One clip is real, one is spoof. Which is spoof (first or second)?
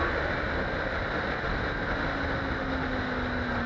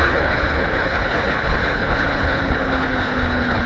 second